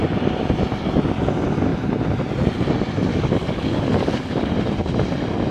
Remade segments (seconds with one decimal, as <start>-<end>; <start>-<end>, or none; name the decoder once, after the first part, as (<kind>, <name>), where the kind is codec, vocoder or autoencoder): 3.1-4.5 (codec, DAC)